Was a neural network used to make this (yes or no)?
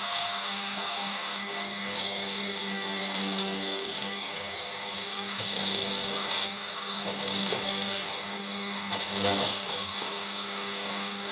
yes